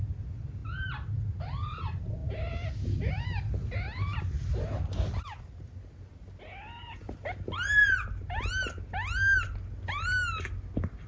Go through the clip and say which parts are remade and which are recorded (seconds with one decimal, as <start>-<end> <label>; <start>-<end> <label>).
0.0-11.1 recorded